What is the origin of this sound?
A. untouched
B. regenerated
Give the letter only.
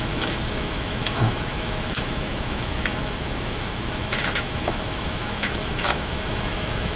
B